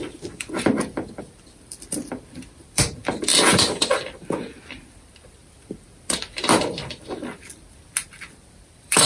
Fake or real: fake